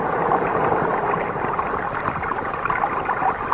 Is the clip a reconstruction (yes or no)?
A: yes